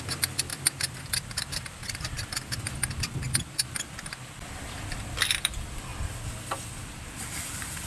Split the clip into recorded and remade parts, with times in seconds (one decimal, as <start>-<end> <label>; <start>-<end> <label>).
0.0-5.9 remade; 5.9-6.8 recorded; 6.8-7.9 remade